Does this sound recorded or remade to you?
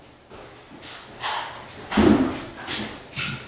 recorded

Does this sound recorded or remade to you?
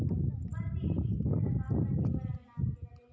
recorded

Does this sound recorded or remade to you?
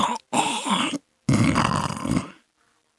recorded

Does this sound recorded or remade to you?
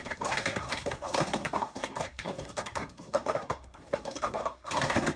remade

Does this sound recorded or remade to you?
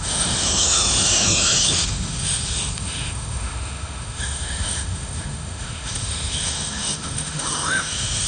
remade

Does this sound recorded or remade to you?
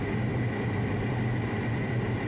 recorded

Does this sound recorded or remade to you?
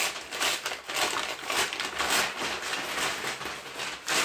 recorded